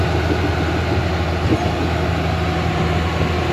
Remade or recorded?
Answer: recorded